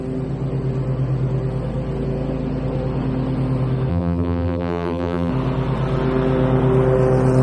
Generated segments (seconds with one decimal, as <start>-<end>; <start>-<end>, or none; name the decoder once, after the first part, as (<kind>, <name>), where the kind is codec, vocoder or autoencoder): 3.9-5.3 (vocoder, BigVGAN v2)